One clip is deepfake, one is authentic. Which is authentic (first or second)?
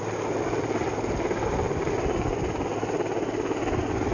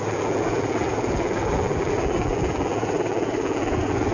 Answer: first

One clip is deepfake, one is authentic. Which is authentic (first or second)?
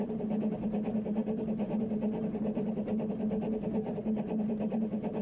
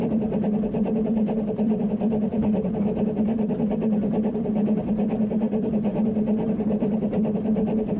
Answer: first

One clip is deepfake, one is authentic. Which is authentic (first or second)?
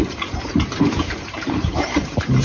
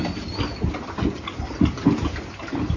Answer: second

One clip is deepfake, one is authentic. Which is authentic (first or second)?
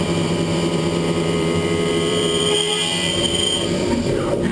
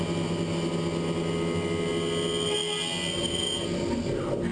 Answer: second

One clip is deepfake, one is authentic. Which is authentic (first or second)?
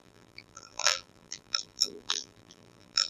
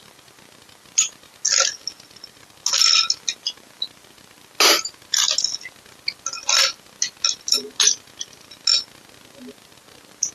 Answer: second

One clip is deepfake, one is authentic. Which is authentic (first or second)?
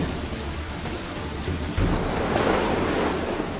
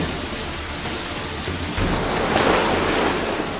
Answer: second